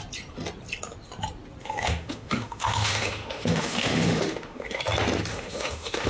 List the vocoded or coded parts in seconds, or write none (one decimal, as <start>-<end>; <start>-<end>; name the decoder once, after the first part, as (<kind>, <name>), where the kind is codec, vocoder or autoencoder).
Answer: 1.6-4.8 (autoencoder, DAC-VAE); 5.3-6.1